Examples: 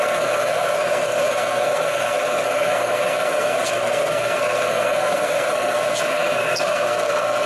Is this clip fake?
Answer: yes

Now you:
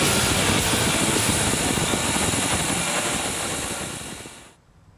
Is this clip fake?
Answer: no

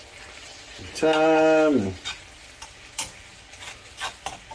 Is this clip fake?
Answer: no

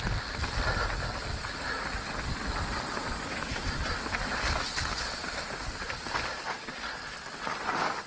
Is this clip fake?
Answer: no